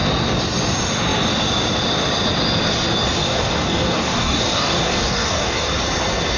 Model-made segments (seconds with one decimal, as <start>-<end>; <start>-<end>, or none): 3.2-5.7